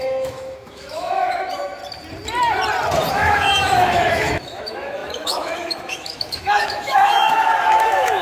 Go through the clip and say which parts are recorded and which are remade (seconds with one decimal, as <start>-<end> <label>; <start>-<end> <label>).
0.0-1.8 remade; 1.8-3.1 recorded; 3.1-8.2 remade